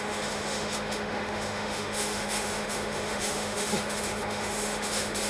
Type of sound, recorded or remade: remade